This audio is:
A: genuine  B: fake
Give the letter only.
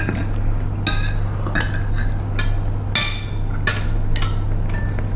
A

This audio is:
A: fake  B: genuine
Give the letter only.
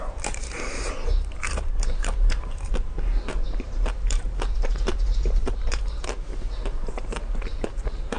A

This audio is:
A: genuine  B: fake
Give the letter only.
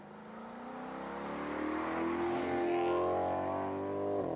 A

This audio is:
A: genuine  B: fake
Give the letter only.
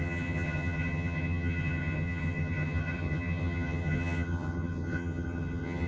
B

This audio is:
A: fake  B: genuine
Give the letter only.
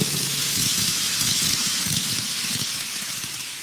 A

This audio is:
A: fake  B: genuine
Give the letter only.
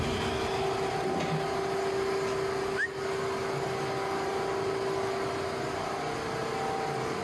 B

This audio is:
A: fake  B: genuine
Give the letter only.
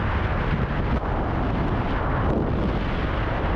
B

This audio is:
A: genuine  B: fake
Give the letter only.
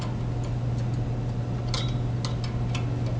A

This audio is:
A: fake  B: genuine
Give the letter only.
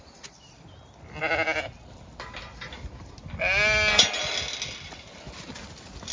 B